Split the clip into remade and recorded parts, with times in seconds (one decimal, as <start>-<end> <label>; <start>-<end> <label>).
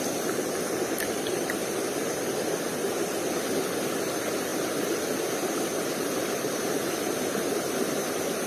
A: 0.0-8.5 recorded